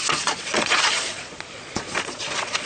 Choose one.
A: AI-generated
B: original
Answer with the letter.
A